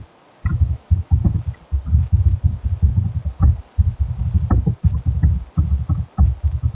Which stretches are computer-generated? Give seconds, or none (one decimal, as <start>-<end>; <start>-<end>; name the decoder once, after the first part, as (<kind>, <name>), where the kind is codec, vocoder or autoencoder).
0.5-1.2 (autoencoder, DAC-VAE)